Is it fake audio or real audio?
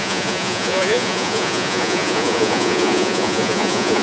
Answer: fake